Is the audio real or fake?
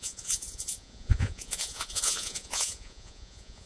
fake